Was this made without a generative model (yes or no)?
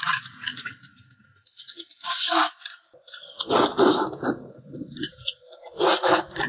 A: yes